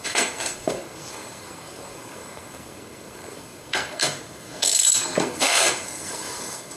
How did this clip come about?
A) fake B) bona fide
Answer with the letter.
A